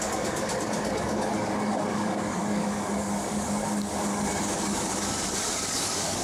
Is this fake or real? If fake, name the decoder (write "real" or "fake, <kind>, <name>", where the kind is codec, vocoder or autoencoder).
fake, codec, DAC